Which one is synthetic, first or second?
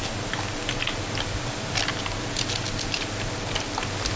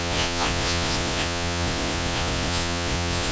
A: second